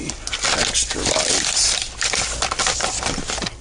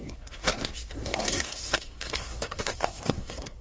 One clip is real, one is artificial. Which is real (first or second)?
first